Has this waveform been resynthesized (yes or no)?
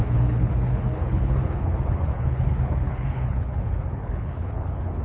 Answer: yes